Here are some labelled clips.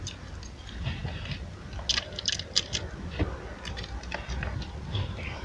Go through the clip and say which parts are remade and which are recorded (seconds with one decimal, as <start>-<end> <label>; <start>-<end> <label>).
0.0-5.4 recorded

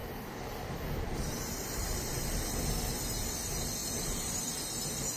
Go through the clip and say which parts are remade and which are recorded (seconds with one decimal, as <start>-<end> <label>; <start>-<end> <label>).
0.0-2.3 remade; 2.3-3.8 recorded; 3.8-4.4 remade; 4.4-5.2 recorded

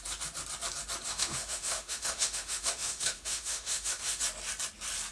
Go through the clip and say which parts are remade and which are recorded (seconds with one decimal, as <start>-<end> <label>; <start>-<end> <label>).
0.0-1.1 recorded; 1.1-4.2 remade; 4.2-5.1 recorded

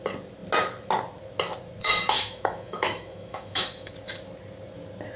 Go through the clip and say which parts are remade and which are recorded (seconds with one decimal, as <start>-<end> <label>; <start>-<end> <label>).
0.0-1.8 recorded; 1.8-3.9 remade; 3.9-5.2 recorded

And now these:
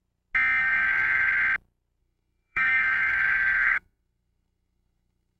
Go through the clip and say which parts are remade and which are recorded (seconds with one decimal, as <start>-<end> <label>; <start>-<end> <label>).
0.0-0.6 recorded; 0.6-1.3 remade; 1.3-2.0 recorded; 2.0-5.4 remade